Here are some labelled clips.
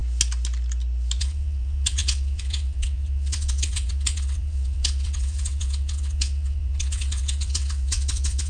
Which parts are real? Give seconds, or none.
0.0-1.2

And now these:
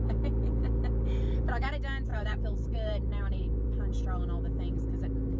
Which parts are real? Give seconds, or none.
0.0-2.1; 4.2-5.4

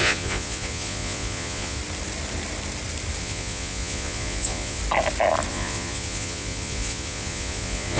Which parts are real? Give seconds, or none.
1.8-3.2; 4.8-5.5

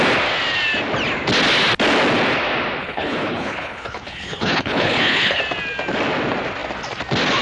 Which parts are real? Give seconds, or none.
0.0-2.8; 5.4-7.4

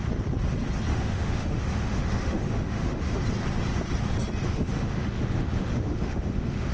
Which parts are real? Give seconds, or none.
0.0-0.9; 3.2-4.5

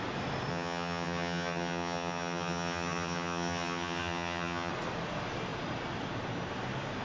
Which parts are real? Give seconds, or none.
0.0-0.5; 4.7-7.0

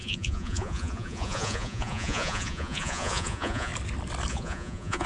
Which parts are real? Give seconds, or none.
3.7-4.3

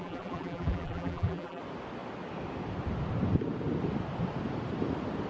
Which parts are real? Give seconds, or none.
1.6-5.3